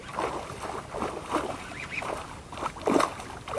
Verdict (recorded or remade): recorded